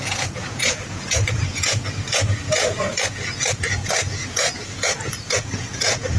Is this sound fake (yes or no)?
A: yes